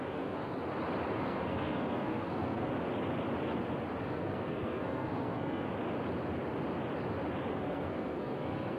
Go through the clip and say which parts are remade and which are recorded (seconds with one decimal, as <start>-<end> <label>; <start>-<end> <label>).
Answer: 0.0-0.5 remade; 0.5-1.1 recorded; 1.1-2.7 remade; 2.7-4.0 recorded; 4.0-5.7 remade; 5.7-7.5 recorded; 7.5-8.8 remade

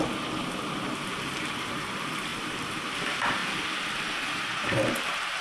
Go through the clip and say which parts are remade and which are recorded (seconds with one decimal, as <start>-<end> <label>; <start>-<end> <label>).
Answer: 0.0-3.4 remade; 3.4-4.1 recorded; 4.1-5.4 remade